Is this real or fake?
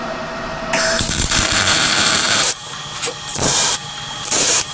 fake